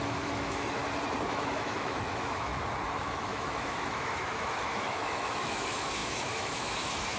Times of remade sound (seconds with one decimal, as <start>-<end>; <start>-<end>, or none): 0.0-0.8; 1.3-2.5; 3.0-7.2